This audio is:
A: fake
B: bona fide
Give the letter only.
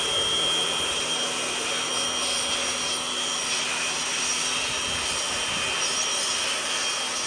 B